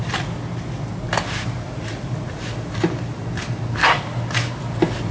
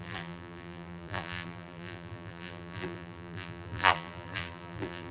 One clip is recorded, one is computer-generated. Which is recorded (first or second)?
first